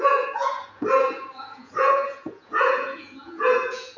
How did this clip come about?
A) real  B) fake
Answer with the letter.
B